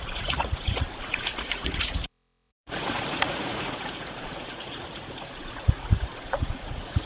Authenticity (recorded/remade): remade